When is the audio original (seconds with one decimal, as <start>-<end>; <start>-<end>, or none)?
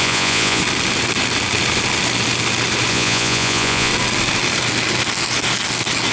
0.6-2.9; 3.9-6.1